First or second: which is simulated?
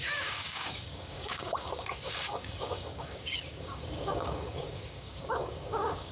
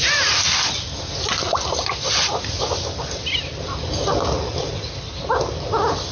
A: first